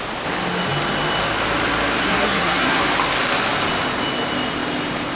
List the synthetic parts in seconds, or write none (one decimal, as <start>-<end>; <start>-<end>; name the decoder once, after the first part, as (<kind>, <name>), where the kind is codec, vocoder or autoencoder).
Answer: 2.0-2.8 (codec, SNAC)